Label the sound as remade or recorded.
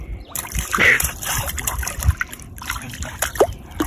remade